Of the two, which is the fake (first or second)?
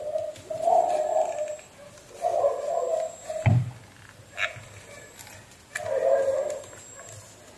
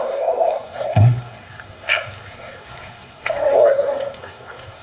second